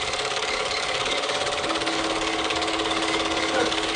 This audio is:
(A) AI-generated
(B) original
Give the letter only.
A